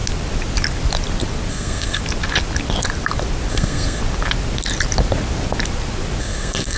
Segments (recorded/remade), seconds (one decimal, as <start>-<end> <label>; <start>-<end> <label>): 0.0-1.5 recorded; 1.5-2.0 remade; 2.0-3.5 recorded; 3.5-4.0 remade; 4.0-6.2 recorded; 6.2-6.8 remade